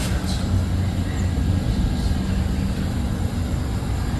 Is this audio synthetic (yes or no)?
no